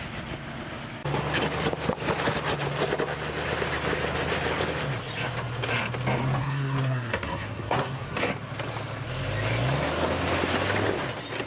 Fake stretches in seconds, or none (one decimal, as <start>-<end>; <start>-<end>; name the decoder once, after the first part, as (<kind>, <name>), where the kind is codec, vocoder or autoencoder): 6.4-8.3 (codec, SNAC)